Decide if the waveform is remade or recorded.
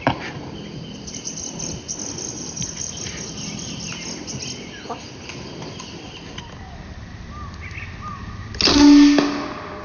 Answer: recorded